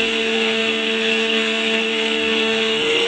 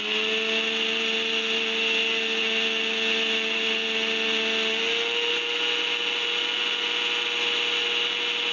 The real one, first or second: second